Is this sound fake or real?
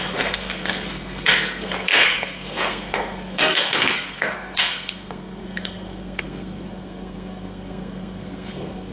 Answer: fake